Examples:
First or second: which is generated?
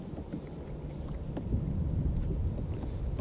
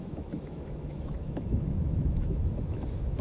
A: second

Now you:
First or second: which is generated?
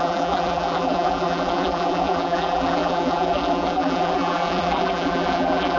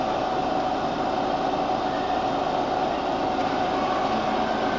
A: first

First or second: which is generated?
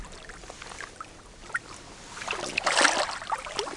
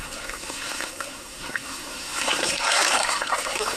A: second